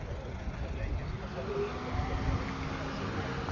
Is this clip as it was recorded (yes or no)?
yes